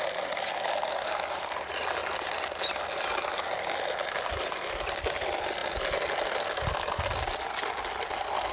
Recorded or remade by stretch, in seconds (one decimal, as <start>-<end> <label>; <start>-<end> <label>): 0.0-8.5 recorded